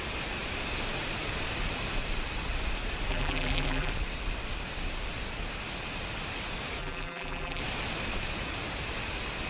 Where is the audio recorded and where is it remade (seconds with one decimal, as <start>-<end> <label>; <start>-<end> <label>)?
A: 0.0-3.1 recorded; 3.1-3.9 remade; 3.9-6.8 recorded; 6.8-7.6 remade; 7.6-9.5 recorded